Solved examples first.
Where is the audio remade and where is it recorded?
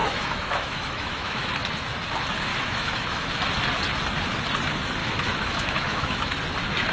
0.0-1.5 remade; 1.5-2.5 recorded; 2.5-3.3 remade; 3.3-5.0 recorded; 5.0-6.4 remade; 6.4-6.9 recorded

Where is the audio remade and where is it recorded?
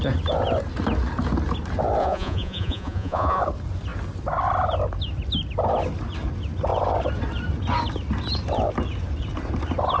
0.0-2.0 recorded; 2.0-3.4 remade; 3.4-10.0 recorded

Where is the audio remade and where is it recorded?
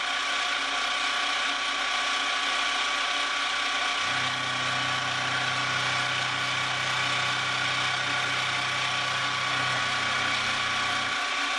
0.0-11.6 recorded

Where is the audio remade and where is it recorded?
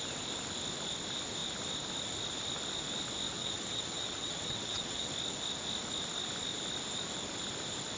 0.0-3.4 recorded; 3.4-5.1 remade; 5.1-8.0 recorded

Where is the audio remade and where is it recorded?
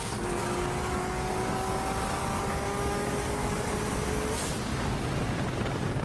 0.0-0.4 recorded; 0.4-1.7 remade; 1.7-2.2 recorded; 2.2-3.7 remade; 3.7-6.0 recorded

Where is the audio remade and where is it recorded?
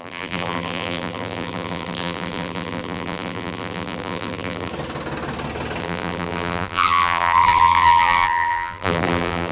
0.0-4.7 remade; 4.7-5.8 recorded; 5.8-9.5 remade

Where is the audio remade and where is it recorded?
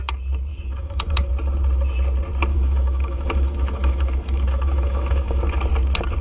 0.0-0.5 recorded; 0.5-1.3 remade; 1.3-2.5 recorded; 2.5-5.4 remade; 5.4-6.2 recorded